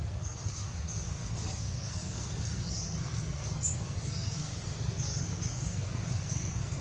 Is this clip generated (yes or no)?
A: yes